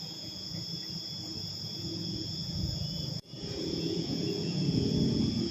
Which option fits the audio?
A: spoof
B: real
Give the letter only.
A